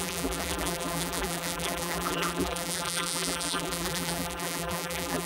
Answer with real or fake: fake